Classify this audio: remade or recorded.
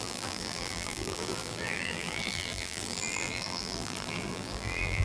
remade